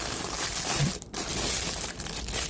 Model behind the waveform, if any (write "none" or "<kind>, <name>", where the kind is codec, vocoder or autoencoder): none